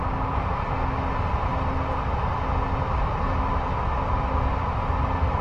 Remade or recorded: recorded